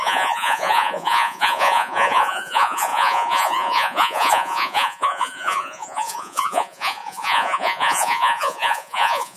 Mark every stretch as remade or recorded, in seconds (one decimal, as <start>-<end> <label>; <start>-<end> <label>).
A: 0.0-9.4 remade